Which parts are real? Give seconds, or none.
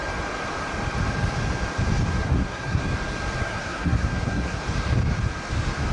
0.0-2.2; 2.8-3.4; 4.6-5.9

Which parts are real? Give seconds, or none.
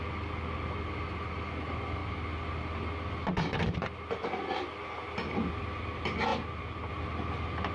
0.0-7.7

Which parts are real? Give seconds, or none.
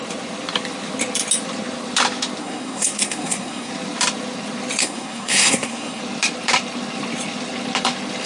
0.0-2.4; 3.7-4.8; 6.0-8.3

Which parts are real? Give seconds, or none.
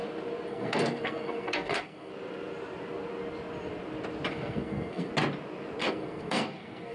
0.0-0.5; 2.1-4.3; 5.1-5.8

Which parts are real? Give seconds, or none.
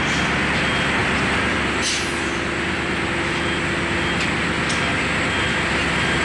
0.0-6.2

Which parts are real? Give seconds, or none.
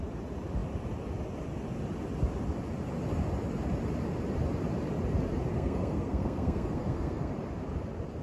0.0-5.5; 7.3-8.2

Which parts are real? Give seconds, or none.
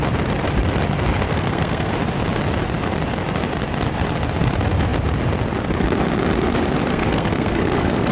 0.0-1.3; 1.9-6.9